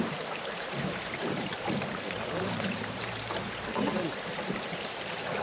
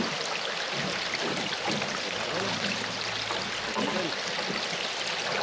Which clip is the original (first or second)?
second